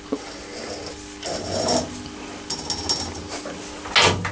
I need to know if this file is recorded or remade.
recorded